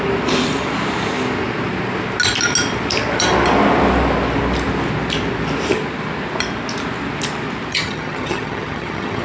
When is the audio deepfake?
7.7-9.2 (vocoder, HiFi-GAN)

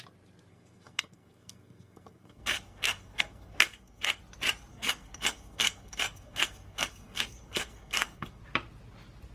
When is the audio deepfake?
0.5-4.2 (codec, SNAC); 4.7-8.4